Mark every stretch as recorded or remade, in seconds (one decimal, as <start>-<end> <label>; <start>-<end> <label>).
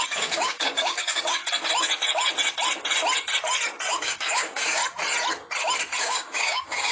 0.0-1.4 remade; 1.4-3.9 recorded; 3.9-4.8 remade; 4.8-6.0 recorded; 6.0-6.9 remade